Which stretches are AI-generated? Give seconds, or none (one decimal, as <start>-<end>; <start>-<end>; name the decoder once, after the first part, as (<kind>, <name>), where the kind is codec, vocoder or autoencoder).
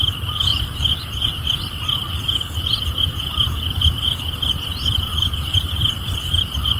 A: 0.5-4.5 (vocoder, BigVGAN v2); 5.1-6.8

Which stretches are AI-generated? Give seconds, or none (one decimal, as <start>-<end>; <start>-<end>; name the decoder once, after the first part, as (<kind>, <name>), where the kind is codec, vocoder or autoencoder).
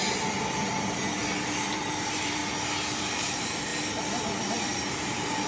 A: 1.6-2.4 (vocoder, BigVGAN v2); 3.0-3.7; 4.4-5.5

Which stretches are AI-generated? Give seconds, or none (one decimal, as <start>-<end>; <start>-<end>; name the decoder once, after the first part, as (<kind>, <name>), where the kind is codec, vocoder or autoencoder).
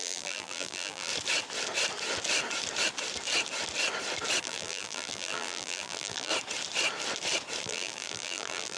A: 0.0-1.1 (vocoder, BigVGAN v2); 4.4-6.3; 7.6-8.8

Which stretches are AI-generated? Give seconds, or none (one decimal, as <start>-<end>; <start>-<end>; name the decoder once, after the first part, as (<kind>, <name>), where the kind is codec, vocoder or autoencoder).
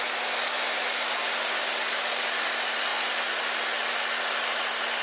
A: none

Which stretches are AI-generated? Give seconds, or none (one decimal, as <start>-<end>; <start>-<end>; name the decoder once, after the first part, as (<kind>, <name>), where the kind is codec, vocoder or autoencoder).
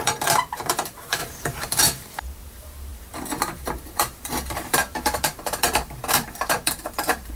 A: 0.0-7.4 (vocoder, BigVGAN v2)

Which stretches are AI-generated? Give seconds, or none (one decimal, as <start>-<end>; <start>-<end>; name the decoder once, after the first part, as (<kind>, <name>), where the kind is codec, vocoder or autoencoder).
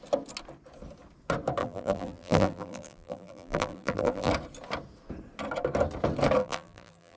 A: 1.6-4.3 (vocoder, BigVGAN v2); 6.4-7.2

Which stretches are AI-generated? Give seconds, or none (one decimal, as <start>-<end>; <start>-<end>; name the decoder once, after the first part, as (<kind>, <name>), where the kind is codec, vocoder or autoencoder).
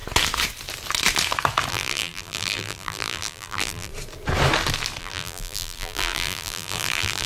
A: 1.7-3.9 (vocoder, BigVGAN v2); 5.0-7.3